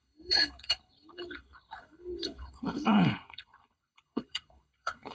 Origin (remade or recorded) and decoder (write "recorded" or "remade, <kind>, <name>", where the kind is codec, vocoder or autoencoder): remade, codec, HILCodec